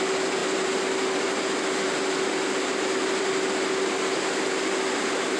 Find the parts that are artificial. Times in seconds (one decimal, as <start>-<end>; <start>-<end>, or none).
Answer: none